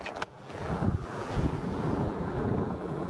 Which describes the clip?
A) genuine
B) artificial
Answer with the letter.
B